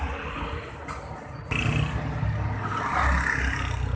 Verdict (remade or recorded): recorded